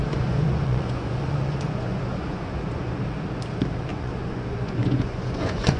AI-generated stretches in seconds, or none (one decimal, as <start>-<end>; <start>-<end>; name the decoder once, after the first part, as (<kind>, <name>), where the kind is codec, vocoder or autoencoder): 0.0-3.0 (vocoder, Vocos); 3.9-5.8